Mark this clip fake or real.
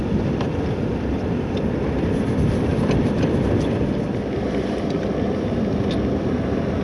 fake